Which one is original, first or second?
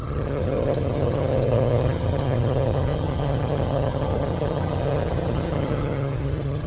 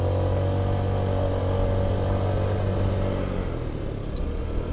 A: second